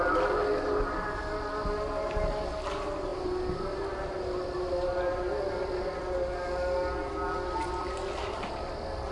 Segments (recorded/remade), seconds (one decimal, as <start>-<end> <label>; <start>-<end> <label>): 0.0-9.1 recorded